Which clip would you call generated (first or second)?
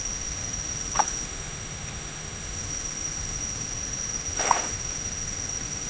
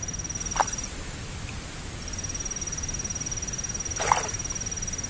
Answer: first